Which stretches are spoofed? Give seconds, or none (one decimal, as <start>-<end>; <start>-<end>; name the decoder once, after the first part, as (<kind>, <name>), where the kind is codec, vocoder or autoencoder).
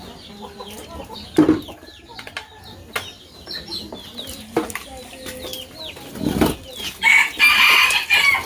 none